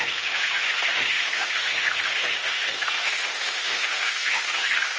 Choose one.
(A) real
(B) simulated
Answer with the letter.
B